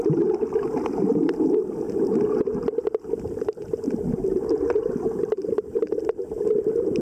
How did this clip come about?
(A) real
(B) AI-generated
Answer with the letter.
A